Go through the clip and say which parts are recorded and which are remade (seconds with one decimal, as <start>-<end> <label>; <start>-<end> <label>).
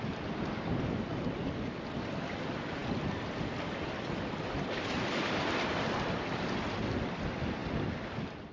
0.0-8.5 recorded